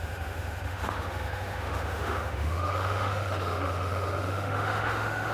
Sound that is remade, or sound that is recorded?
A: remade